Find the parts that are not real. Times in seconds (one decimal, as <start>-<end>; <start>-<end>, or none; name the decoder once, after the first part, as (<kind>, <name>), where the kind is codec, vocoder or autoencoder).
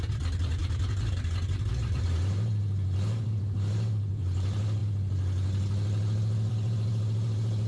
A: 0.0-4.8 (vocoder, BigVGAN v2); 6.5-7.7